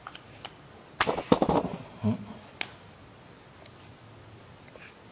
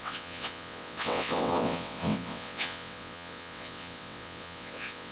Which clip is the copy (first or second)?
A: second